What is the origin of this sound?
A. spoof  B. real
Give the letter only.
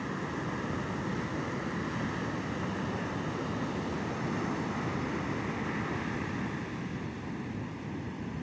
B